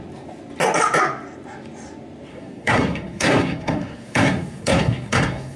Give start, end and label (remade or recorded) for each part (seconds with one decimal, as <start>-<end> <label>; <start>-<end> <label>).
0.0-2.3 recorded; 2.3-5.6 remade